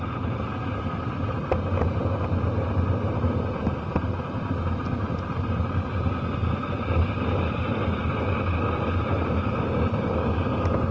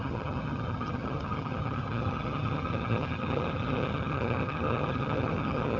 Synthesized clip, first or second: second